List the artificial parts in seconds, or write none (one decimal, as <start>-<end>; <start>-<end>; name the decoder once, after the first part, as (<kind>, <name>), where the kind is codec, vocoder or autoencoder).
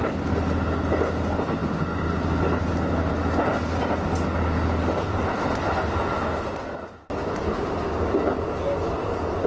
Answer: none